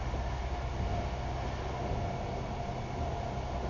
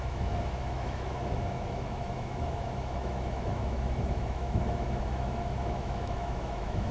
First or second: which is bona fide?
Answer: first